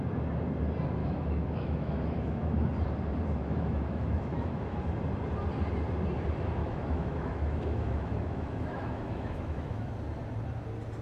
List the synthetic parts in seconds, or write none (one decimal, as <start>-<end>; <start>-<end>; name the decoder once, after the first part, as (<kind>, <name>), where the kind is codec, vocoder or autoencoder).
1.0-2.7 (autoencoder, DAC-VAE); 3.4-4.8; 6.6-9.9

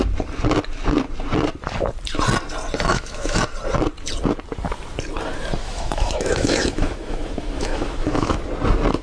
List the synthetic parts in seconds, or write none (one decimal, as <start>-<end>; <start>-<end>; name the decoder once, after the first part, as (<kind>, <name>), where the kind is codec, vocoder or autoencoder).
2.9-3.4 (autoencoder, DAC-VAE); 5.6-8.4